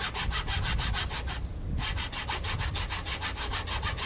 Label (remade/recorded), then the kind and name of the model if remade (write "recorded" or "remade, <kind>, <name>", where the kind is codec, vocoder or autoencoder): recorded